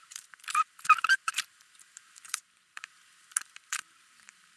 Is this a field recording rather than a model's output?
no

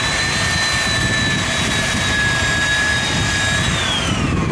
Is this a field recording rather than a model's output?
yes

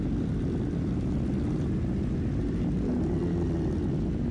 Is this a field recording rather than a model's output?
yes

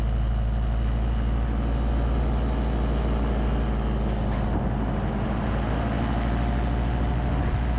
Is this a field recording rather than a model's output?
yes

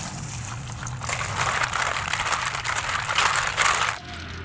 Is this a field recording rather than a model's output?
yes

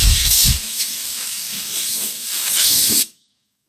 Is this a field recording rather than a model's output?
no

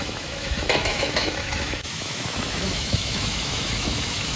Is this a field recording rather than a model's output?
no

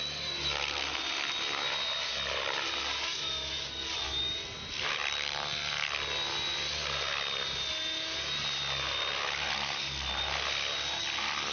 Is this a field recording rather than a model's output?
yes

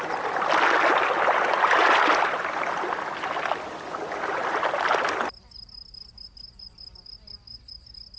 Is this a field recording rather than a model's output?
yes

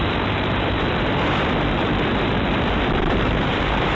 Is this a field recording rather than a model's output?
no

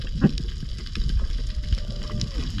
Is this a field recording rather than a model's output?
yes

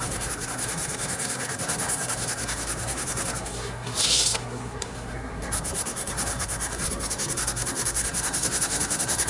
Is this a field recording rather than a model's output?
no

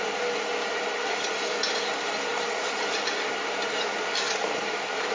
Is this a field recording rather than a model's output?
no